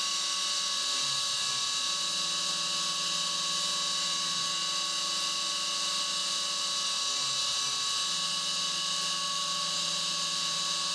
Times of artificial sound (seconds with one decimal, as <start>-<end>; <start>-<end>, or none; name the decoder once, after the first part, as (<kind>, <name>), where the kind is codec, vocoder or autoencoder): none